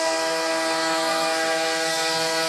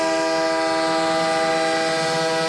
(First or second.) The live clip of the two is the second